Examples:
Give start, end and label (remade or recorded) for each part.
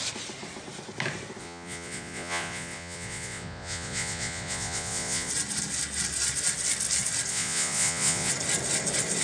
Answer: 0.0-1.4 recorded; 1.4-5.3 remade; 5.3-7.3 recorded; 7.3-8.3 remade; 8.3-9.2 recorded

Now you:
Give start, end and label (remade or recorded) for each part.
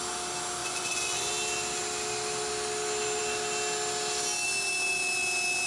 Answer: 0.0-0.6 recorded; 0.6-1.3 remade; 1.3-5.7 recorded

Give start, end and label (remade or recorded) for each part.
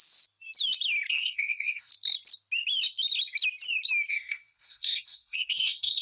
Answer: 0.0-1.1 recorded; 1.1-1.9 remade; 1.9-4.1 recorded; 4.1-6.0 remade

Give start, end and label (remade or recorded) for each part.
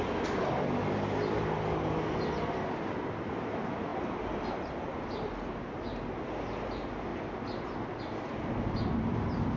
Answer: 0.0-9.6 recorded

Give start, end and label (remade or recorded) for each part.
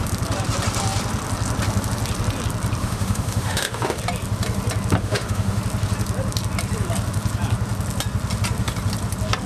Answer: 0.0-2.8 recorded; 2.8-4.0 remade; 4.0-5.0 recorded; 5.0-5.6 remade; 5.6-9.5 recorded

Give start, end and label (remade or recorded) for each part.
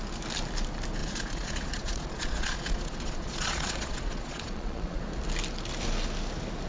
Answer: 0.0-1.0 recorded; 1.0-5.0 remade; 5.0-6.7 recorded